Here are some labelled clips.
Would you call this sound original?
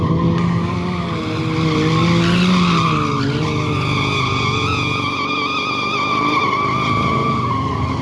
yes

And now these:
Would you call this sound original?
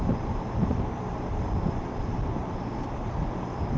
yes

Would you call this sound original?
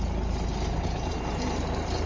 yes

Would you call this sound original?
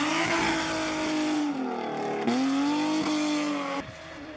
yes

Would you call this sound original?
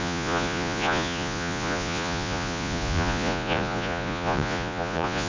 no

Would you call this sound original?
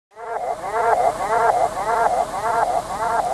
yes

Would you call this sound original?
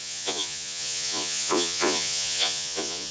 no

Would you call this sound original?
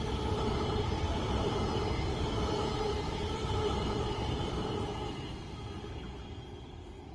yes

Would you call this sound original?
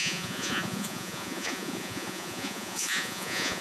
no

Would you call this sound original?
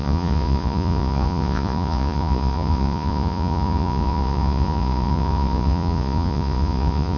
no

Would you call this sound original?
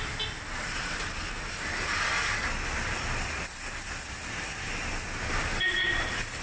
yes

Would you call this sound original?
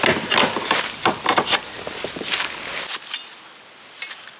yes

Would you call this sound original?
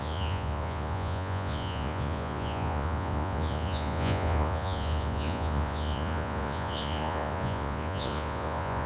no